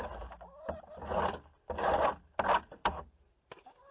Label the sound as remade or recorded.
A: recorded